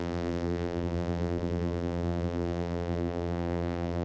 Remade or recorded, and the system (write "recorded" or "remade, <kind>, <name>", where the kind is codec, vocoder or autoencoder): remade, vocoder, BigVGAN v2